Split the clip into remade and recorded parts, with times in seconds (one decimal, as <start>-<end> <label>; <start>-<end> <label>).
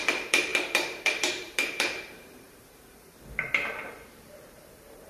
0.0-5.1 remade